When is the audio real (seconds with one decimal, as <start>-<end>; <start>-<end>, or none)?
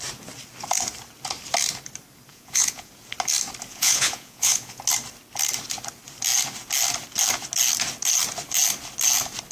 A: 0.0-2.3; 2.9-3.7; 4.8-9.5